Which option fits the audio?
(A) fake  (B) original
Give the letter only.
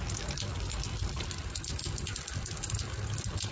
B